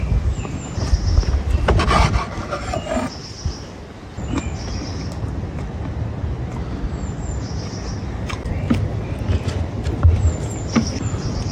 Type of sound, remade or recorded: recorded